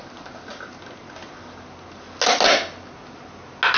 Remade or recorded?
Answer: recorded